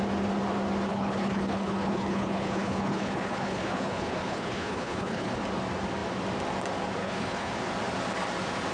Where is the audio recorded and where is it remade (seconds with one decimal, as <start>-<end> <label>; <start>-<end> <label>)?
0.0-0.9 recorded; 0.9-5.4 remade; 5.4-7.0 recorded; 7.0-7.5 remade; 7.5-8.7 recorded